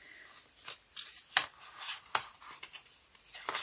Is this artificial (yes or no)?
no